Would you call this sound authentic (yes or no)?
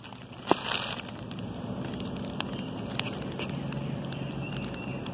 yes